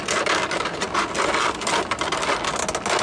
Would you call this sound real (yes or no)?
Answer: yes